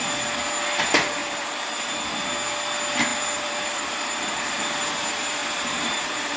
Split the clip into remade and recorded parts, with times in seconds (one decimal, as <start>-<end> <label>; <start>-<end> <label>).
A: 0.0-1.2 recorded; 1.2-1.7 remade; 1.7-3.1 recorded; 3.1-4.6 remade; 4.6-5.4 recorded; 5.4-6.4 remade